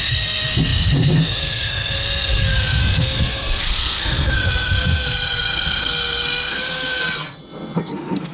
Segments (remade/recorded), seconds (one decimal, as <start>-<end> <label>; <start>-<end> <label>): 0.0-8.3 remade